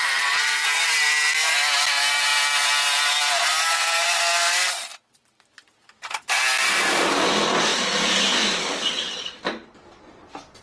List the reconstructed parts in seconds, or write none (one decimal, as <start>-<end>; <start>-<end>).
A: 0.0-0.6